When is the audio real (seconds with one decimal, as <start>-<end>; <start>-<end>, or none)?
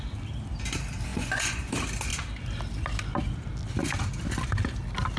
0.0-1.1; 1.7-5.2